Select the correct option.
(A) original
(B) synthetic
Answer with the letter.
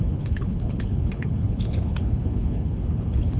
B